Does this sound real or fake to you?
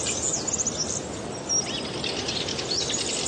real